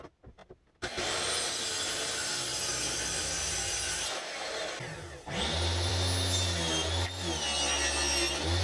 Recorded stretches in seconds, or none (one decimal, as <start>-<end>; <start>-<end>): 0.0-8.6